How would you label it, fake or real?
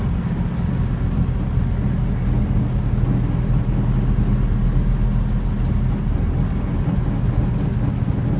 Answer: real